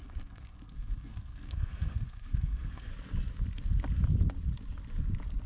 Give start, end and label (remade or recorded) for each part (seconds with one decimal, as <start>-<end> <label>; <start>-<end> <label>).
0.0-2.9 remade; 2.9-5.5 recorded